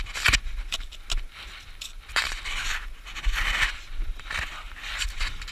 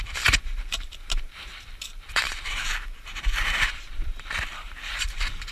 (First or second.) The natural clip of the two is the first